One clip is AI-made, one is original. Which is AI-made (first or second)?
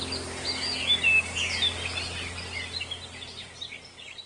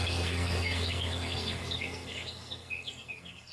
second